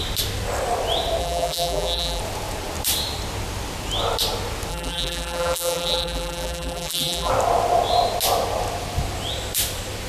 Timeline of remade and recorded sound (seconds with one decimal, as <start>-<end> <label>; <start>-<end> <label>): 0.0-1.2 recorded; 1.2-2.2 remade; 2.2-4.7 recorded; 4.7-7.3 remade; 7.3-10.1 recorded